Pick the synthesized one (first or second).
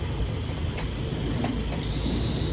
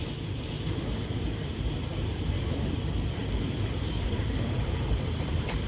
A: second